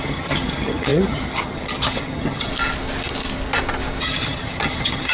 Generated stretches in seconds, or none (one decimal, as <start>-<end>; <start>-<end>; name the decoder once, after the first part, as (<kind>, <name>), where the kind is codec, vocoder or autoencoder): 0.0-2.5 (vocoder, HiFi-GAN); 4.0-5.1